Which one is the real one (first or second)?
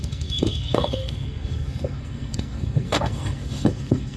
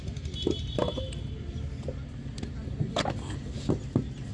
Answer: second